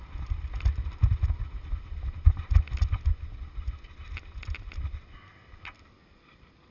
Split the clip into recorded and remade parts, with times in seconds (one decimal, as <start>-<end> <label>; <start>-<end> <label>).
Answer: 0.0-6.7 recorded